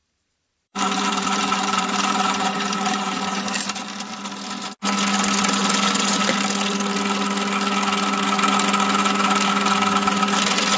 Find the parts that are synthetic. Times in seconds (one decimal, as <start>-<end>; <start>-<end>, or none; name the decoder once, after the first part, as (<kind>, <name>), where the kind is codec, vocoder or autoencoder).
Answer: 0.0-3.4 (vocoder, BigVGAN v2)